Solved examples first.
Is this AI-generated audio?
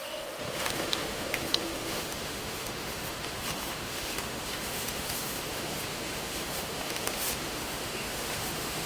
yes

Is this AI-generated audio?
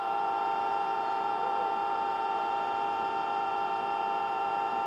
yes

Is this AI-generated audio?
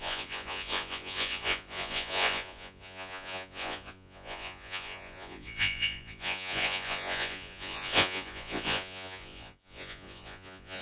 yes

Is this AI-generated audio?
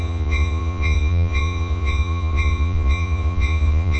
yes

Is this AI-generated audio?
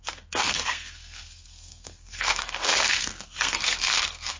yes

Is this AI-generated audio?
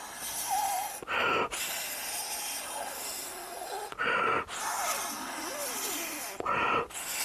no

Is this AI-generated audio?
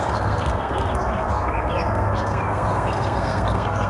yes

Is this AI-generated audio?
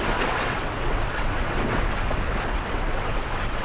yes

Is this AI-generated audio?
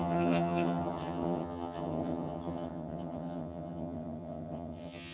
yes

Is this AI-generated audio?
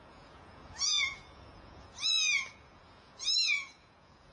yes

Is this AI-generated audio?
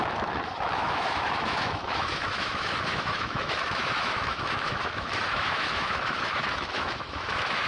yes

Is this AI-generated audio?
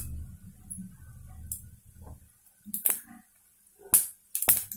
no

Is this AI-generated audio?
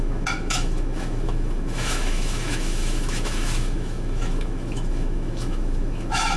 yes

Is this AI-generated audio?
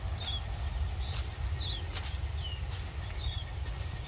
no